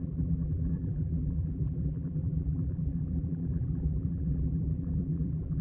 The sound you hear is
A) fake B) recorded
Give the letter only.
A